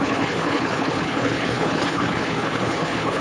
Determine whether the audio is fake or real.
fake